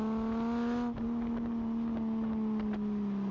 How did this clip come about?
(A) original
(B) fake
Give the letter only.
A